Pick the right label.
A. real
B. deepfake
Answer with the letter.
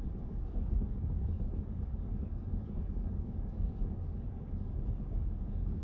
B